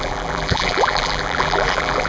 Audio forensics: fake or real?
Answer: fake